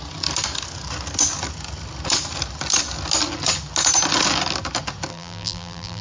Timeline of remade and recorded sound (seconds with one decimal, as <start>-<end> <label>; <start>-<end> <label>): 0.0-5.1 recorded; 5.1-6.0 remade

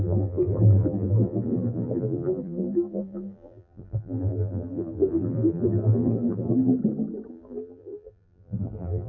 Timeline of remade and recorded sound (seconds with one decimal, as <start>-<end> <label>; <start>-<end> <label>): 0.0-6.8 remade; 6.8-7.3 recorded; 7.3-9.1 remade

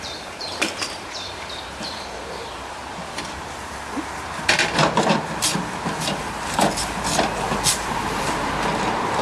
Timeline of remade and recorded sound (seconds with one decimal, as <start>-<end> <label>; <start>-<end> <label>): 0.0-2.8 remade; 2.8-5.1 recorded; 5.1-9.2 remade

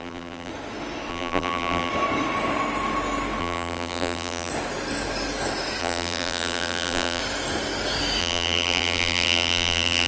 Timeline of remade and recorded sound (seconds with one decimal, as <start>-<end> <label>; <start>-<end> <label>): 0.0-0.5 remade; 0.5-1.1 recorded; 1.1-1.9 remade; 1.9-3.4 recorded; 3.4-4.5 remade; 4.5-5.8 recorded; 5.8-7.2 remade; 7.2-8.2 recorded; 8.2-10.1 remade

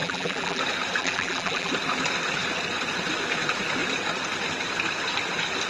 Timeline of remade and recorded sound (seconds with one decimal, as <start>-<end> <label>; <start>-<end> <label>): 0.0-0.6 remade; 0.6-1.0 recorded; 1.0-1.7 remade; 1.7-5.7 recorded

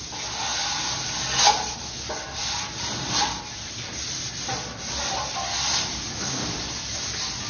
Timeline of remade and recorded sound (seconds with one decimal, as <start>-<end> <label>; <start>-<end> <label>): 0.0-7.5 recorded

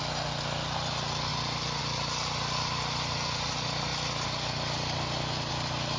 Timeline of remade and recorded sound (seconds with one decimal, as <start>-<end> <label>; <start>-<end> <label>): 0.0-3.9 remade; 3.9-5.5 recorded; 5.5-6.0 remade